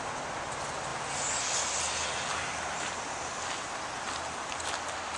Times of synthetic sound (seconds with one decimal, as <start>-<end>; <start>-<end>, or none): none